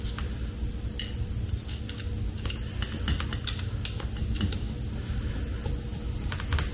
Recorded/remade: recorded